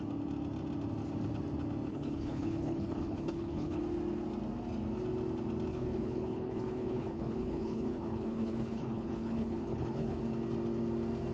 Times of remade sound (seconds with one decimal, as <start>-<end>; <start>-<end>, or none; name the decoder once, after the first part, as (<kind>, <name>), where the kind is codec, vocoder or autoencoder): 1.9-3.8 (codec, HILCodec); 5.7-10.2